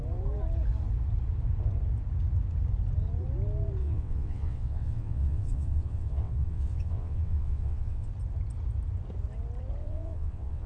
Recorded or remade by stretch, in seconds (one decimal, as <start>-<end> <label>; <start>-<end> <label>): 0.0-3.8 recorded; 3.8-8.1 remade; 8.1-9.8 recorded; 9.8-10.7 remade